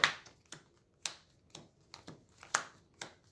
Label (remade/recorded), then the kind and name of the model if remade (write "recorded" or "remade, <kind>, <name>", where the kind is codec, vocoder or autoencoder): recorded